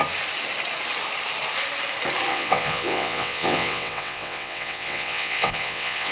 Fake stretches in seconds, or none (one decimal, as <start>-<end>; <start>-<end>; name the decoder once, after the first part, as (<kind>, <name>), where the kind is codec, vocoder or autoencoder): 2.3-6.1 (vocoder, WaveNeXt)